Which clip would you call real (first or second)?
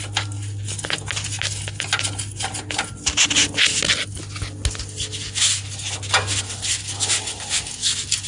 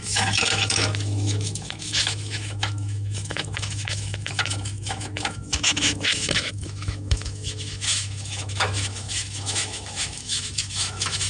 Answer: first